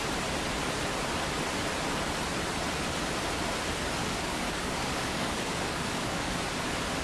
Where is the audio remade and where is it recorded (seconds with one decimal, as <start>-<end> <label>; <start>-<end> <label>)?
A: 0.0-4.0 recorded; 4.0-6.3 remade; 6.3-7.0 recorded